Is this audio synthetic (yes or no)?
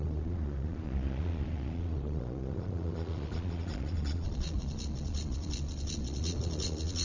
yes